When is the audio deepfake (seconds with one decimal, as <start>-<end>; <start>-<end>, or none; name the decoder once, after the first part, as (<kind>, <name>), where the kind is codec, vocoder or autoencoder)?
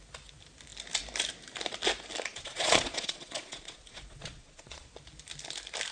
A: 2.3-4.9 (vocoder, Vocos)